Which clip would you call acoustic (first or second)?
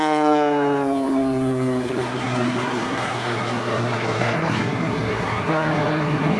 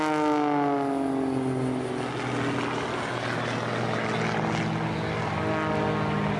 second